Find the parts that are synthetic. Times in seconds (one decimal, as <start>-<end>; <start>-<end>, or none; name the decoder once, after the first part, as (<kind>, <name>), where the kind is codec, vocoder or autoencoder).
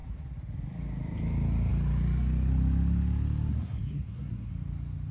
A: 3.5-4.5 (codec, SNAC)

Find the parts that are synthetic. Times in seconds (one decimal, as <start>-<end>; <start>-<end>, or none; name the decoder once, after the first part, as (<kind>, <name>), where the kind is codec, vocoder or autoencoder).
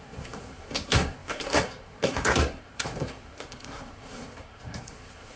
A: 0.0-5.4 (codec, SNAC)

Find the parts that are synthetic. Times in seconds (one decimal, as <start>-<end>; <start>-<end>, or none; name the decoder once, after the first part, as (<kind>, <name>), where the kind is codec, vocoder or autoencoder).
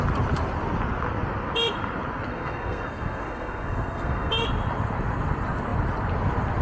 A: 2.3-4.3 (codec, SNAC)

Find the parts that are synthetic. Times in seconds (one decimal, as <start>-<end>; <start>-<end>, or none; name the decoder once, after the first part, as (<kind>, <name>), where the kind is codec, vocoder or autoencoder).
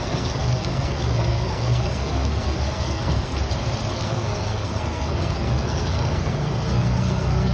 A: 0.0-3.3 (codec, SNAC); 3.9-7.5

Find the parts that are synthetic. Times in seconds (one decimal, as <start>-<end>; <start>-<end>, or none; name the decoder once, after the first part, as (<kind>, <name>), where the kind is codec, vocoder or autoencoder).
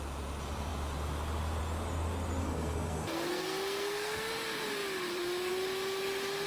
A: 2.4-4.3 (codec, SNAC)